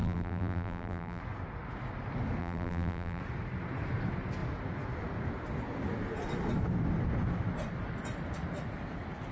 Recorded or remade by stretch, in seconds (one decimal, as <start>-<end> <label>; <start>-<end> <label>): 0.0-1.2 remade; 1.2-2.4 recorded; 2.4-3.2 remade; 3.2-9.3 recorded